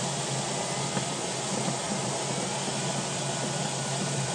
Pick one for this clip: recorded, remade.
recorded